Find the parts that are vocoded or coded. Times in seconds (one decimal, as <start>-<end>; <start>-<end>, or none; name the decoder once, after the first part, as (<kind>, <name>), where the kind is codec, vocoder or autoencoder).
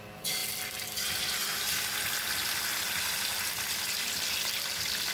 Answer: none